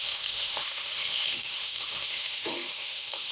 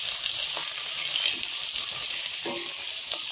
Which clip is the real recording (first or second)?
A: second